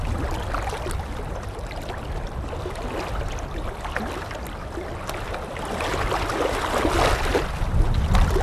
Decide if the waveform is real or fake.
real